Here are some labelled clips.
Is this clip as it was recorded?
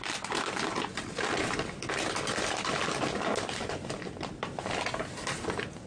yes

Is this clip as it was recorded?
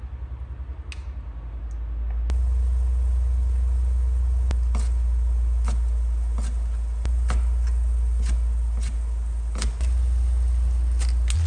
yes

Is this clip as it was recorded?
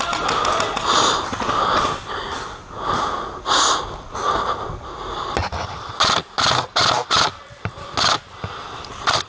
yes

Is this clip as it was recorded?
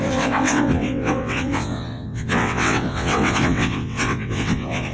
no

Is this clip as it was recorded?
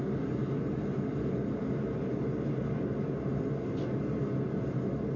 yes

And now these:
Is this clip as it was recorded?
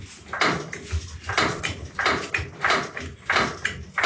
yes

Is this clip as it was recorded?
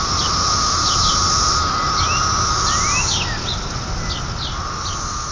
yes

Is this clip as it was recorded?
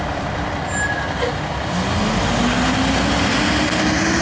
yes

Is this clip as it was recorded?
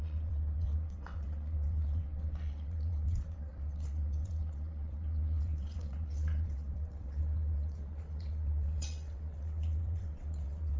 no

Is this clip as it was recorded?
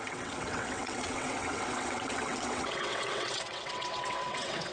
no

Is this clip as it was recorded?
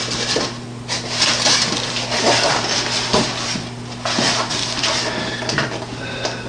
yes